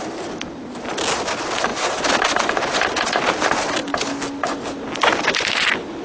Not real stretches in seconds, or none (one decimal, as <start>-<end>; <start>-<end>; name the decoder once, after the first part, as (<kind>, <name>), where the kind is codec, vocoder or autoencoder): none